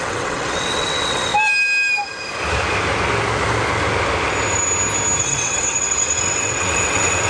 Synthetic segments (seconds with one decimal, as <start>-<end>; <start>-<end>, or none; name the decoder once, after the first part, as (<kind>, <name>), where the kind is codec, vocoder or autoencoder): 0.0-1.3 (vocoder, WaveNeXt); 5.2-7.3